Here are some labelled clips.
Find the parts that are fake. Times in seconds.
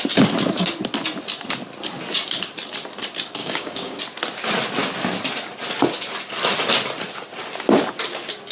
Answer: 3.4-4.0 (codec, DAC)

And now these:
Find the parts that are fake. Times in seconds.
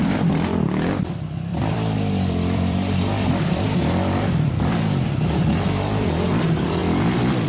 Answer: 0.0-0.5 (vocoder, BigVGAN v2); 1.0-7.5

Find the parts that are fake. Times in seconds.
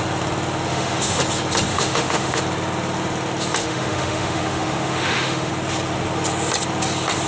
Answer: 0.7-1.2 (autoencoder, DAC-VAE); 1.7-2.4; 3.6-5.5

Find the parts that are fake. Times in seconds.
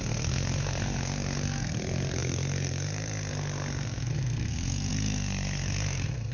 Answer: 0.0-6.3 (codec, SNAC)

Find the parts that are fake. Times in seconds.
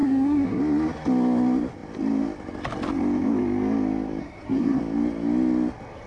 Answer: 0.0-0.6 (codec, SNAC); 4.2-4.8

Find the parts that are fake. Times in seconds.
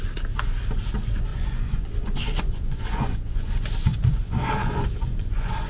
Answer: 1.3-3.5 (vocoder, Vocos); 3.9-5.7